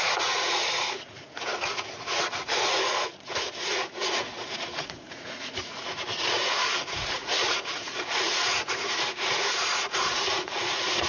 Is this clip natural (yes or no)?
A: no